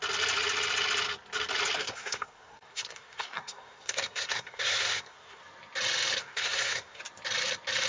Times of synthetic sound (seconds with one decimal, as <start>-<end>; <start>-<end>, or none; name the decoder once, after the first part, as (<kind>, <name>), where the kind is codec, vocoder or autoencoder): 1.8-5.4 (codec, SNAC); 6.2-7.0